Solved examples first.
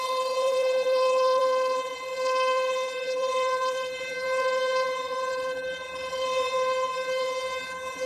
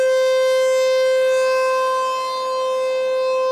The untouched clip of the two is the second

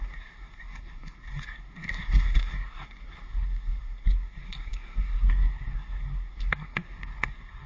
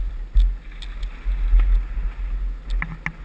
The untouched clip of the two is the second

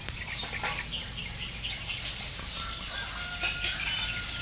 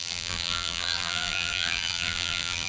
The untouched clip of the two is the first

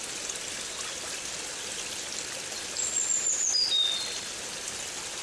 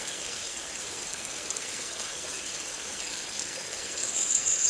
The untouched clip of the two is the first